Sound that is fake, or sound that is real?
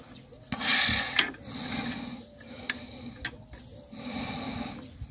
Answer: real